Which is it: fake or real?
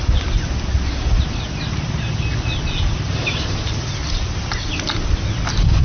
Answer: real